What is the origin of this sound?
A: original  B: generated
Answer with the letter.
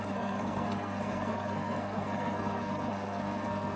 B